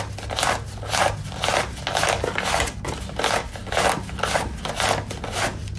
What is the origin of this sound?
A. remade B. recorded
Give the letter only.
B